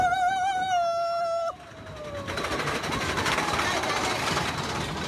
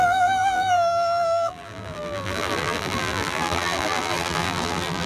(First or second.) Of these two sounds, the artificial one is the second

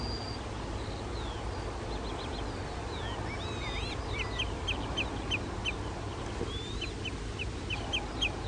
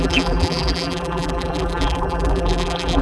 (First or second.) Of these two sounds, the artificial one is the second